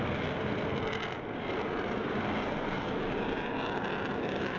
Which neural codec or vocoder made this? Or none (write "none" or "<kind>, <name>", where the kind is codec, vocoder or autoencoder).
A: none